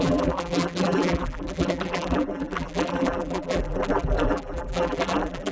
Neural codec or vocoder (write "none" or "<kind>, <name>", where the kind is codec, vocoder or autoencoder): vocoder, BigVGAN v2